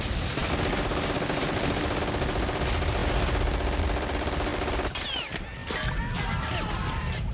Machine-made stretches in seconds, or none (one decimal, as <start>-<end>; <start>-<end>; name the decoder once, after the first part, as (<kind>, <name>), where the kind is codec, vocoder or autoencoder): 0.0-3.0 (vocoder, BigVGAN v2); 3.8-4.5; 5.1-5.6